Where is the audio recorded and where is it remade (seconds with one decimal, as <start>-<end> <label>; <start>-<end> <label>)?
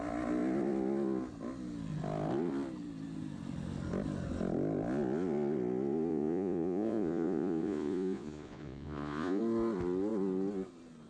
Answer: 0.0-6.1 recorded; 6.1-9.4 remade; 9.4-11.1 recorded